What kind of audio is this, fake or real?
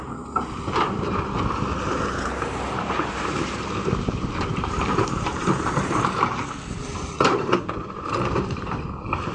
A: fake